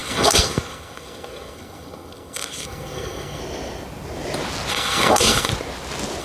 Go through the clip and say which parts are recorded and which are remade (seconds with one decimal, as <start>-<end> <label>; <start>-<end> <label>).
0.0-3.4 remade; 3.4-4.7 recorded; 4.7-5.5 remade; 5.5-6.2 recorded